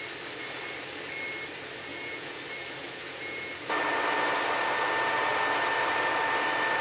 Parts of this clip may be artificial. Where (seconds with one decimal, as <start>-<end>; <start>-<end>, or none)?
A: 1.9-2.4; 2.8-3.5